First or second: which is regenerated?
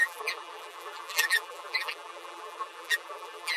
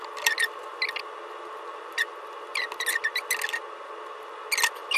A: first